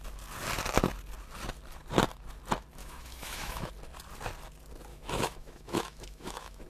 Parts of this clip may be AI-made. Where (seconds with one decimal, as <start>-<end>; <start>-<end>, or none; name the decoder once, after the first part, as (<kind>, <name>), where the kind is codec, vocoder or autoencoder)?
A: 2.8-3.7 (autoencoder, DAC-VAE); 4.9-6.7